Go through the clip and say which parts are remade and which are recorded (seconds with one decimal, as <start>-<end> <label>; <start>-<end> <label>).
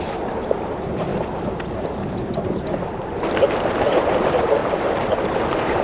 0.0-1.1 remade; 1.1-1.7 recorded; 1.7-5.8 remade